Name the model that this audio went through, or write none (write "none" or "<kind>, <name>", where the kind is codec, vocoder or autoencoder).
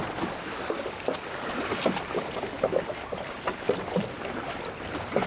none